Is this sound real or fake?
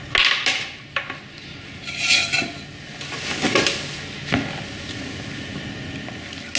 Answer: real